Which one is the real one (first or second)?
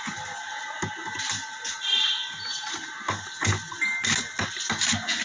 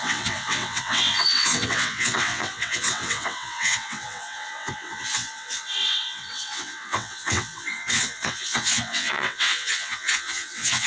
first